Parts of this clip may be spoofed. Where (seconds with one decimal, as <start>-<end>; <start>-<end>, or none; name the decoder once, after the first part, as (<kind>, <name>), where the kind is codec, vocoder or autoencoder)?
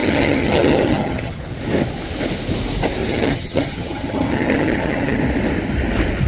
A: 0.0-1.4 (vocoder, HiFi-GAN); 3.0-5.2